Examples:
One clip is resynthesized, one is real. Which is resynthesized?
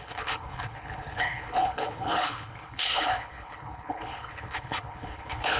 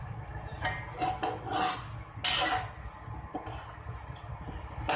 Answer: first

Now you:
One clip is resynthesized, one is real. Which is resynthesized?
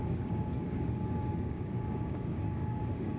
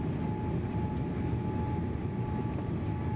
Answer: first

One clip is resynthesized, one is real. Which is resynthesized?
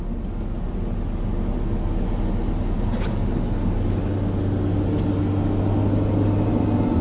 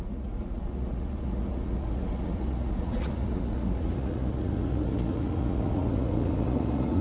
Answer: second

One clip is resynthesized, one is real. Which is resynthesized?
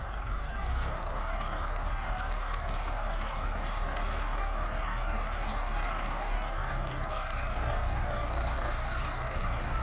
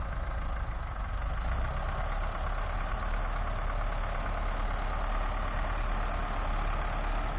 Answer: first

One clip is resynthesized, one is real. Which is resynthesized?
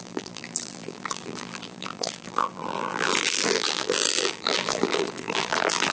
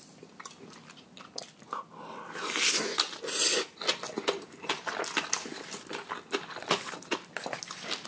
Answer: first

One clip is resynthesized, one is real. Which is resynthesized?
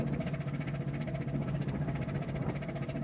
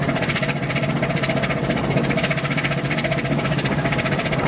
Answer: second